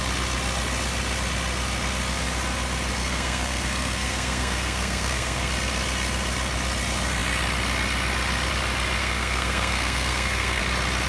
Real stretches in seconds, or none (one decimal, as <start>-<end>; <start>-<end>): 0.0-3.0; 5.5-9.0; 10.6-11.1